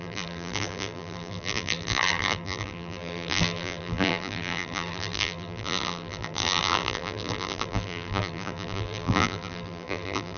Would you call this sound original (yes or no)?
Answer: no